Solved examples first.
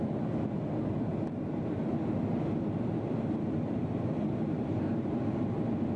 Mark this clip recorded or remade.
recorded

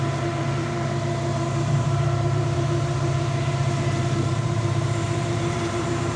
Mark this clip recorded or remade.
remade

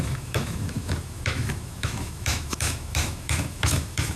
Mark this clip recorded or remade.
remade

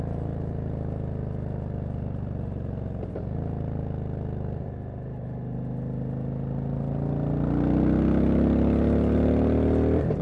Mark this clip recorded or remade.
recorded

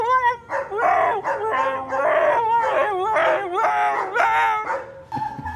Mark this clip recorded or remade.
recorded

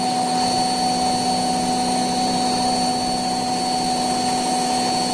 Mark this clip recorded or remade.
recorded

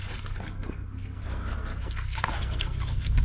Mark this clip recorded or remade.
remade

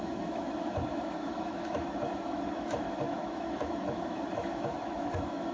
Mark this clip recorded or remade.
remade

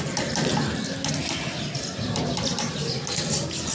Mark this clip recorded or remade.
recorded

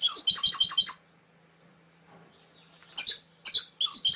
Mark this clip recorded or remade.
recorded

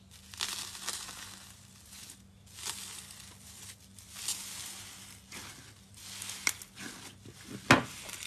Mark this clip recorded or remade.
recorded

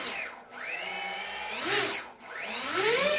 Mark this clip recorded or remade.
recorded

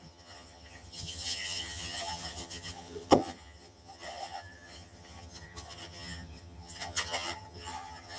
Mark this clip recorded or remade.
remade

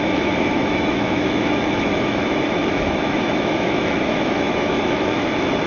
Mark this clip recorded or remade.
remade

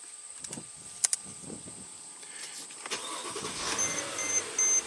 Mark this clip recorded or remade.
recorded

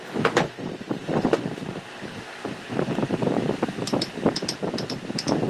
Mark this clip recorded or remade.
recorded